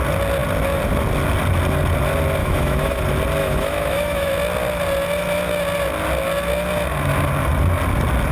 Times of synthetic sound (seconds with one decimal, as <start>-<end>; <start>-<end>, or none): 2.4-3.0; 3.4-4.3